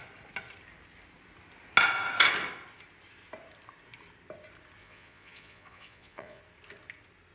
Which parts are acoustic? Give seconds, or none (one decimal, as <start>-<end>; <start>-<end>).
0.0-4.8; 6.4-7.3